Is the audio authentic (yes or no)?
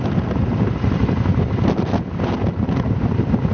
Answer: yes